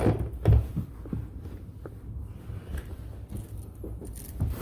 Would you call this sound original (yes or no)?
yes